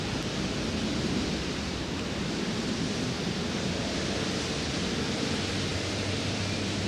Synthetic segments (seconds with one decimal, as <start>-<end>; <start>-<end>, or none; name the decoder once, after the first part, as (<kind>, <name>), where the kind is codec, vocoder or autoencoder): 5.7-6.9 (vocoder, BigVGAN v2)